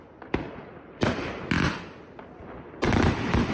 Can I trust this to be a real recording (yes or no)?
yes